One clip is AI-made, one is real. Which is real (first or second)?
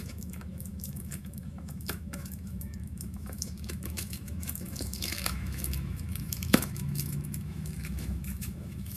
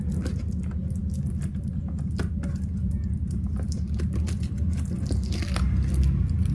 second